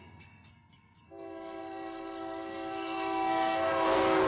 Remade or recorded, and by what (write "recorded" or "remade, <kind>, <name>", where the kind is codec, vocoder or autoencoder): remade, codec, SNAC